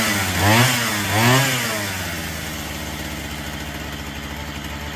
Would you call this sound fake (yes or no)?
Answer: no